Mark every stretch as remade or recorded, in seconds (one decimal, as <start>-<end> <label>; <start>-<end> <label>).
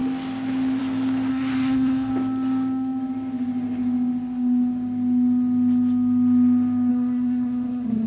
0.0-1.3 recorded; 1.3-2.1 remade; 2.1-6.9 recorded; 6.9-8.1 remade